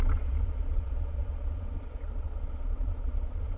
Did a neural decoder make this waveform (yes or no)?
yes